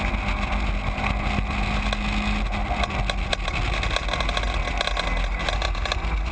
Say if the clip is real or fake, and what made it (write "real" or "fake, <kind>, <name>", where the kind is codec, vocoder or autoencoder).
real